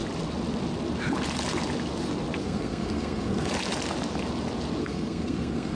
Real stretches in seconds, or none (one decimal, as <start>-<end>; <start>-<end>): 0.0-2.4; 3.5-4.8